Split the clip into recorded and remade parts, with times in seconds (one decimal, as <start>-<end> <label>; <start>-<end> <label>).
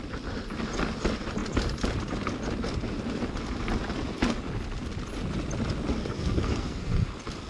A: 0.0-6.0 recorded; 6.0-7.1 remade; 7.1-7.5 recorded